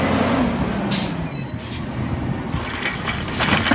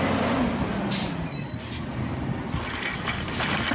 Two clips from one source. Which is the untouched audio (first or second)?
first